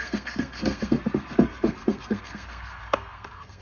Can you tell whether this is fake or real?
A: fake